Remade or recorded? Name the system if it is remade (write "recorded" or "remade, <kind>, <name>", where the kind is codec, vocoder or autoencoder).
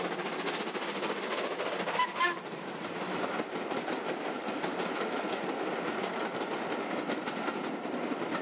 recorded